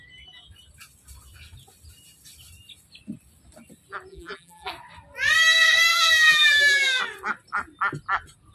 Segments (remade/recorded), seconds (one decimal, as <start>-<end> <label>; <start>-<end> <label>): 0.0-4.1 recorded; 4.1-4.7 remade; 4.7-5.9 recorded; 5.9-7.0 remade; 7.0-8.5 recorded